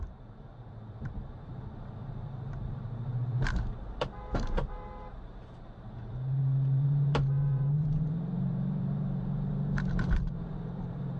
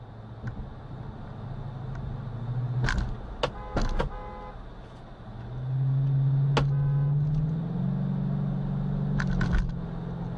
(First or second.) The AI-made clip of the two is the first